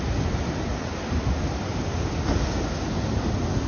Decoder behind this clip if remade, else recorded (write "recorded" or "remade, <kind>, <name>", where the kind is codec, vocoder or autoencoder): recorded